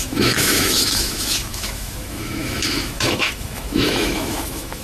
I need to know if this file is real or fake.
fake